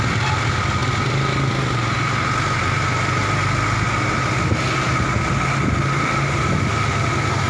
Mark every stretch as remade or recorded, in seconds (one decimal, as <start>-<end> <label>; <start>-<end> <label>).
0.0-7.5 recorded